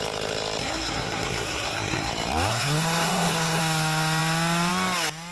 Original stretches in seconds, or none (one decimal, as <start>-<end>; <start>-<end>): 0.0-0.6; 2.1-2.5; 3.6-5.3